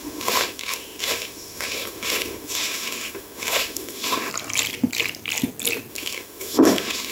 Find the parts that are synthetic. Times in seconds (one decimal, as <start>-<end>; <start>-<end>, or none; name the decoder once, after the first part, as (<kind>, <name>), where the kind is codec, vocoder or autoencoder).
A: 0.0-4.3 (autoencoder, DAC-VAE); 5.9-7.1